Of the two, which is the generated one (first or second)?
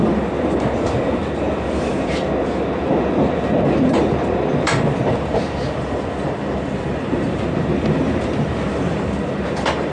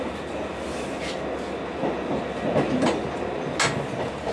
first